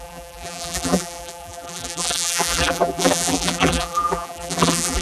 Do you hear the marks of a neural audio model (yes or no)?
yes